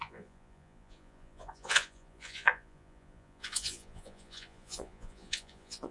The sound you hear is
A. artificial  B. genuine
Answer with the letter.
A